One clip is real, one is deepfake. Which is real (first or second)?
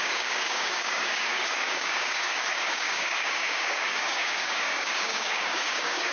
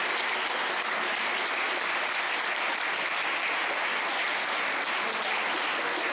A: second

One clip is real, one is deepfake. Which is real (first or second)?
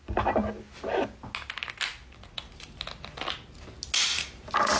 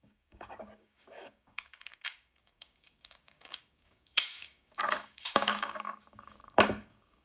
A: first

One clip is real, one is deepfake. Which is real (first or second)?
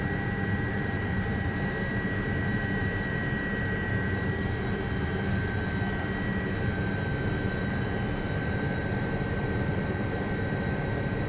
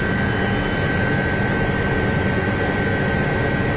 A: second